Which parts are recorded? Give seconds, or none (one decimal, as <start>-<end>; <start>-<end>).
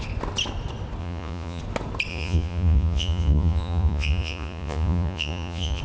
0.0-1.0; 1.6-2.1